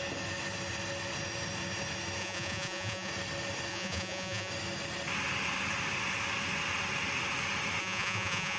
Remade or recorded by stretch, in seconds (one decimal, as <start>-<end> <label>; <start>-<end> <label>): 0.0-2.2 recorded; 2.2-3.1 remade; 3.1-3.7 recorded; 3.7-4.5 remade; 4.5-7.8 recorded; 7.8-8.6 remade